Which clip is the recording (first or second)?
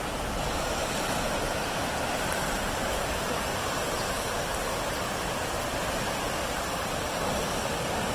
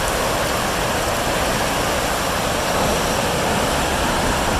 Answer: second